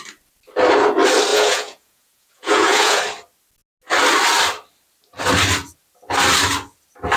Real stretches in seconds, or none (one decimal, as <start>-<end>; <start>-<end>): 0.0-1.3; 3.0-7.2